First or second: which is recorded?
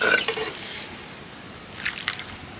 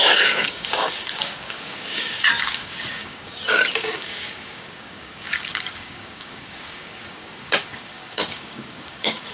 first